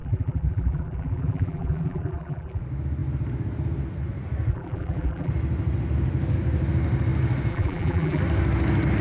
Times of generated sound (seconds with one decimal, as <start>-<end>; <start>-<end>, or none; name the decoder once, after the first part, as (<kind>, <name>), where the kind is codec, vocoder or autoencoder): 0.0-2.6 (vocoder, BigVGAN v2); 4.5-5.3; 7.5-8.2